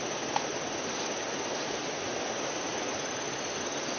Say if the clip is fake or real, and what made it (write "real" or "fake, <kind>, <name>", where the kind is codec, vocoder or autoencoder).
real